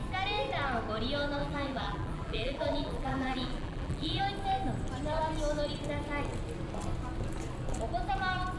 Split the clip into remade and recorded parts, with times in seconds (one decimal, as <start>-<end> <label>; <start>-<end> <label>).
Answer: 0.0-1.4 recorded; 1.4-4.2 remade; 4.2-8.6 recorded